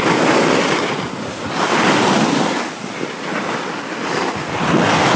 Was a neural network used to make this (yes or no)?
no